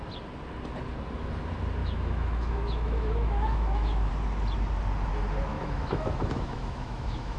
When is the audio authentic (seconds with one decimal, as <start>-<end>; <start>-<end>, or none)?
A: 0.0-1.8; 4.1-5.5